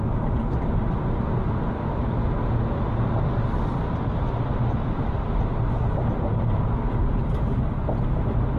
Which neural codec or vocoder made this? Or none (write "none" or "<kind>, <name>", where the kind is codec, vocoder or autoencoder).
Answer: none